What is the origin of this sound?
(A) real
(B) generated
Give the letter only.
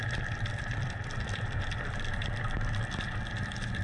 B